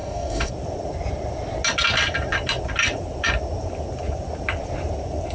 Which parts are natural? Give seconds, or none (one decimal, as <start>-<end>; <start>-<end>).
0.5-5.3